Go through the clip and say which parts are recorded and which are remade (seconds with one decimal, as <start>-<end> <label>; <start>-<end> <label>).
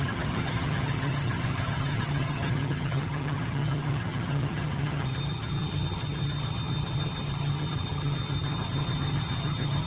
0.0-9.9 remade